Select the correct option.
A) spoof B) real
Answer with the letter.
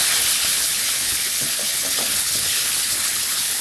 A